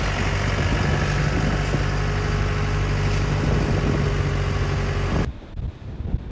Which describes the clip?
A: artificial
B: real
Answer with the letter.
B